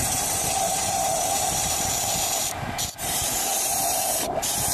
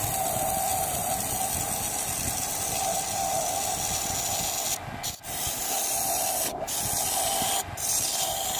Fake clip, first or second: first